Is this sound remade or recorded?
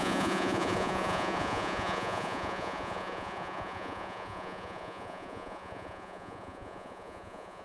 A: remade